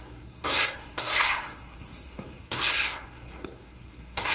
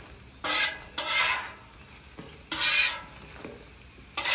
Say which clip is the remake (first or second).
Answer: first